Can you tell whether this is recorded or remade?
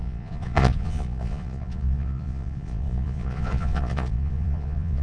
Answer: remade